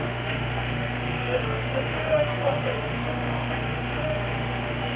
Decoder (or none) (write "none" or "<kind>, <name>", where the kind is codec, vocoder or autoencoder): autoencoder, DAC-VAE